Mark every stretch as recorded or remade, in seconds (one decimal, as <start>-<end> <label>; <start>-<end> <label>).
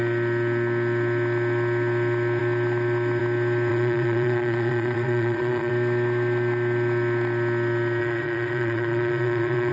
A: 0.0-3.7 recorded; 3.7-5.7 remade; 5.7-8.0 recorded; 8.0-9.7 remade